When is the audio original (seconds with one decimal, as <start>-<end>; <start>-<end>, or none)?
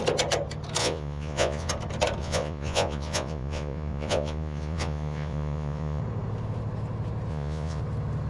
0.0-0.8; 1.7-2.2; 6.0-7.3; 7.8-8.3